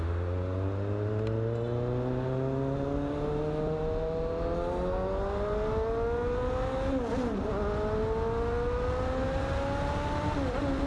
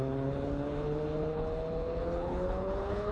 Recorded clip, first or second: first